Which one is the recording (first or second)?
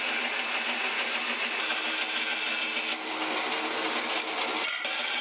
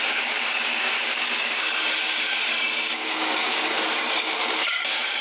first